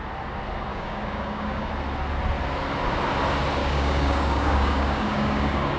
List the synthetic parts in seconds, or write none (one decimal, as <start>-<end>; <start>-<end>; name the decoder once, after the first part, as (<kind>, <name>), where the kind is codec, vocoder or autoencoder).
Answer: 0.7-1.7 (codec, DAC); 3.6-5.8